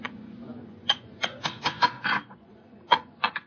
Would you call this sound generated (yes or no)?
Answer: yes